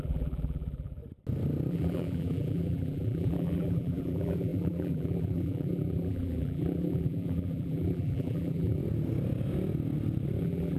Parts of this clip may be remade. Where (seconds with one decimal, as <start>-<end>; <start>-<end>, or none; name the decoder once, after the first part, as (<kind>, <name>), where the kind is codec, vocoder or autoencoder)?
0.0-1.0 (vocoder, BigVGAN v2); 1.7-8.8; 10.4-10.8